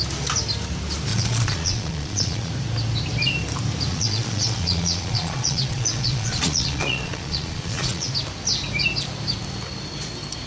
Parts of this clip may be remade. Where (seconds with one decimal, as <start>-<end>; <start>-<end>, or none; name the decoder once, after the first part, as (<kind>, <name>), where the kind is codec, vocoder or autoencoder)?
1.1-2.5 (vocoder, Vocos); 3.9-8.1